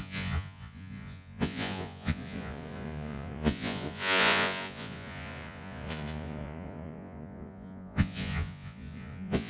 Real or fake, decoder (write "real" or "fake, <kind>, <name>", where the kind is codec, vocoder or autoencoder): fake, vocoder, Vocos